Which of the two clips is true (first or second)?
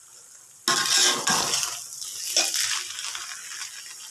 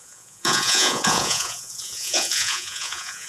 first